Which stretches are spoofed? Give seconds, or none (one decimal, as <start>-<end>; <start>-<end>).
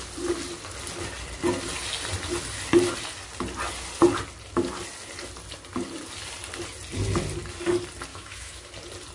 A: 8.1-8.7